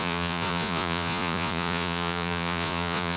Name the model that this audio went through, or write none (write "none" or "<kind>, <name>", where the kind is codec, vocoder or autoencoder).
vocoder, Vocos